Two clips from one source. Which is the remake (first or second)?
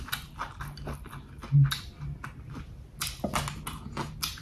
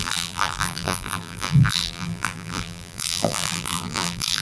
second